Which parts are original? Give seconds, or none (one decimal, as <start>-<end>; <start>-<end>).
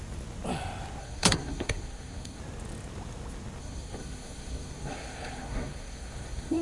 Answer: 0.0-1.0; 2.4-3.6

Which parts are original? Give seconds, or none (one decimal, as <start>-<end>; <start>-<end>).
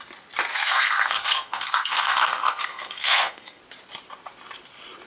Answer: 0.0-0.5; 3.6-5.1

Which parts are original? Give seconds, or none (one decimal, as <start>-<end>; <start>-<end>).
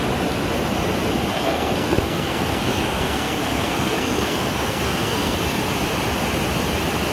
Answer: 0.0-1.3; 5.6-7.1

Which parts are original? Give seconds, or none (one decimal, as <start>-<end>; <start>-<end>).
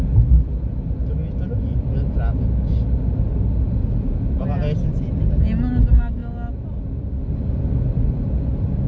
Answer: 0.0-8.9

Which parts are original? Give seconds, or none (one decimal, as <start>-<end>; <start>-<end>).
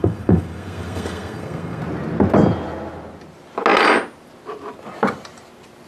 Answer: 1.8-5.9